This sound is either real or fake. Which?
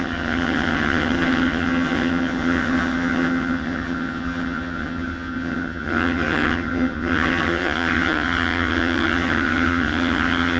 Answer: fake